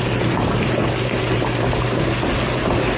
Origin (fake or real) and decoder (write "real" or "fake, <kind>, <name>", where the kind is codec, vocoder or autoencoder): real